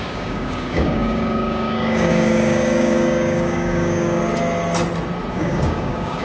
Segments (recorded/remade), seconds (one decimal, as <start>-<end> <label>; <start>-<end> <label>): 0.0-4.2 remade; 4.2-5.3 recorded; 5.3-6.2 remade